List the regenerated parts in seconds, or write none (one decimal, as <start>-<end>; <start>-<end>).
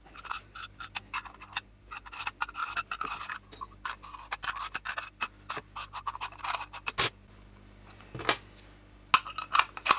none